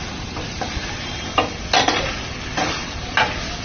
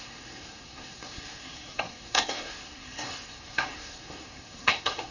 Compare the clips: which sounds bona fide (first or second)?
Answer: first